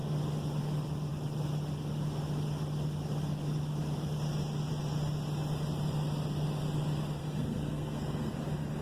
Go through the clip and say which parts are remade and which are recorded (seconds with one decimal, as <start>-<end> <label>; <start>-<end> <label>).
0.0-7.2 recorded; 7.2-8.3 remade; 8.3-8.8 recorded